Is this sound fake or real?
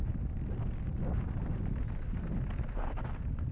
real